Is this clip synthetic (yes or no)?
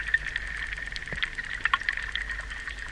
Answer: no